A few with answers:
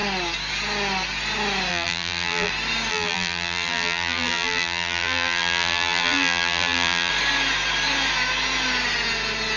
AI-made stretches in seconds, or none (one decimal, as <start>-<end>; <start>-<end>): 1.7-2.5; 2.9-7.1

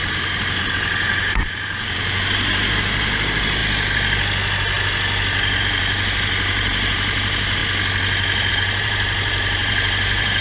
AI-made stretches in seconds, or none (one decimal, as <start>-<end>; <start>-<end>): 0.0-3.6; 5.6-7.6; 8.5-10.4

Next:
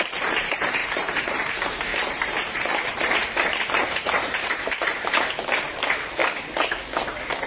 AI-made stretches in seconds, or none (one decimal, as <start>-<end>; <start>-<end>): 0.0-6.2

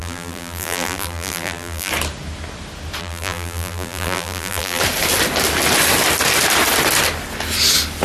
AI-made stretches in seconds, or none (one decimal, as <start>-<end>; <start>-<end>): 0.0-1.9; 3.0-4.8